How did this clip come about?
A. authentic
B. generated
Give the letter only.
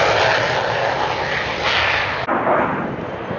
A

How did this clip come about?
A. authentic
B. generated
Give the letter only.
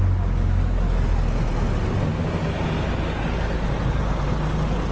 A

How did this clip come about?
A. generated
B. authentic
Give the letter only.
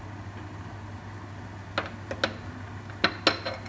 B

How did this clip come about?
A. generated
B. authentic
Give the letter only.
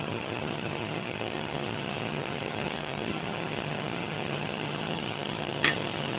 A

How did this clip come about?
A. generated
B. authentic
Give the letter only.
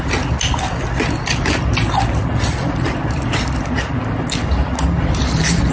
B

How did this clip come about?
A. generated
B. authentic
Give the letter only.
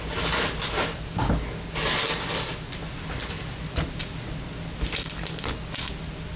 B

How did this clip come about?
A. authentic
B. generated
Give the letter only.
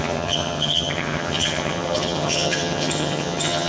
B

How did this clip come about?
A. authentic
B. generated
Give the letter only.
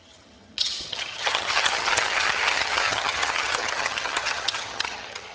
B